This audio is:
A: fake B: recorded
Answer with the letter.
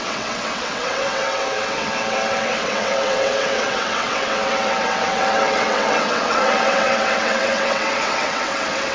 A